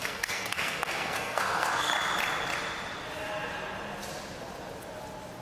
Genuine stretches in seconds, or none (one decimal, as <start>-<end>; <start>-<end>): 1.9-5.4